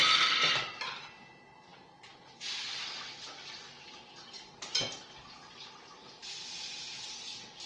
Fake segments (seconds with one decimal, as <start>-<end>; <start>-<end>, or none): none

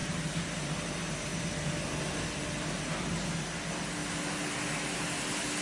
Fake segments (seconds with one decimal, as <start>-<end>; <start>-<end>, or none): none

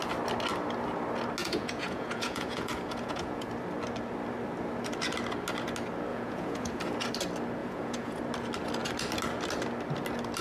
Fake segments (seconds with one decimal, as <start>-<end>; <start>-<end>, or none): 1.4-3.5; 6.1-6.8; 7.6-8.2

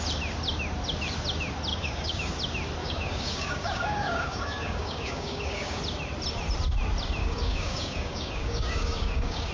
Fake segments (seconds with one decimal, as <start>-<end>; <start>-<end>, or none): 1.7-2.3; 2.8-5.8; 7.2-9.5